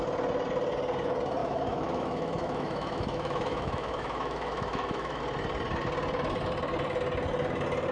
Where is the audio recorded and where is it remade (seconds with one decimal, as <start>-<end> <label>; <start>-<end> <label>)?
0.0-1.4 recorded; 1.4-5.2 remade; 5.2-7.9 recorded